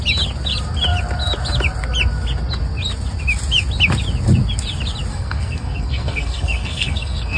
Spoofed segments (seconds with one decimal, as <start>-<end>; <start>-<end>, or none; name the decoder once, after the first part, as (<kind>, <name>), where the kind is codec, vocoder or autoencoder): 5.1-7.4 (codec, SNAC)